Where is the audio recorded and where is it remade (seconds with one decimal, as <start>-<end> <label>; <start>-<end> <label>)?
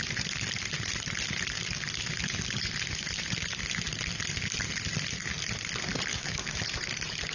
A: 0.0-6.1 recorded; 6.1-6.6 remade; 6.6-7.3 recorded